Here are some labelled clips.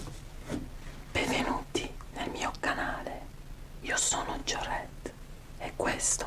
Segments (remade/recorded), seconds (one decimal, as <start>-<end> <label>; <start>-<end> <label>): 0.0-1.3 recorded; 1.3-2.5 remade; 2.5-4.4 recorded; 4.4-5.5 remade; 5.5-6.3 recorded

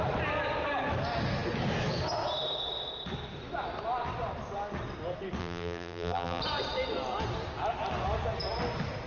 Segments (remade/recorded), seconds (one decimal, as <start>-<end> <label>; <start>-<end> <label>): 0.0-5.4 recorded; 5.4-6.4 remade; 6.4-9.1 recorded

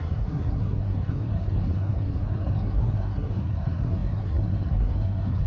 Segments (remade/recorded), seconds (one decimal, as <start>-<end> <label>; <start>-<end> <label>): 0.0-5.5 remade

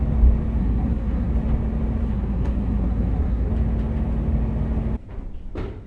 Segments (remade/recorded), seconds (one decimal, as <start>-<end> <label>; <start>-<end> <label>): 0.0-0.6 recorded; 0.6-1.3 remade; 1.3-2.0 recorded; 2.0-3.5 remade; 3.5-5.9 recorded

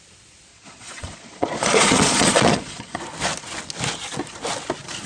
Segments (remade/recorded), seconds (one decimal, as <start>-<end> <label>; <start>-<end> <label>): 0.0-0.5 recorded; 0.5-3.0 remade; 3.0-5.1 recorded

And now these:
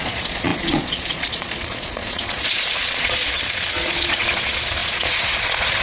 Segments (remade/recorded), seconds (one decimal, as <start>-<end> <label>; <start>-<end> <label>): 0.0-5.8 remade